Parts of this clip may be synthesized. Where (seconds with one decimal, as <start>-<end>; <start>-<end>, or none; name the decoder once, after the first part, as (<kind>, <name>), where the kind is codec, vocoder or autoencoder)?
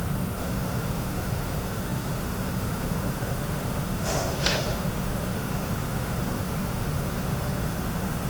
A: 0.0-8.3 (autoencoder, DAC-VAE)